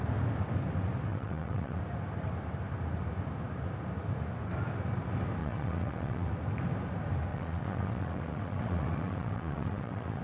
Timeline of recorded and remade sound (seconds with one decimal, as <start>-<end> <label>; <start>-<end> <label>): 0.0-1.1 recorded; 1.1-1.8 remade; 1.8-5.4 recorded; 5.4-6.3 remade; 6.3-7.3 recorded; 7.3-10.2 remade